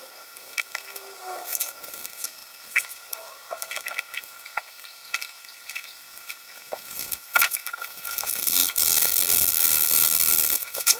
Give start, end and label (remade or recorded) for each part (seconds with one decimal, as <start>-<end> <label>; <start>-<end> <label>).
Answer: 0.0-11.0 remade